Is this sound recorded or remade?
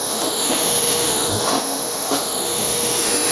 remade